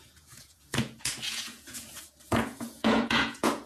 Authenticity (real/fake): fake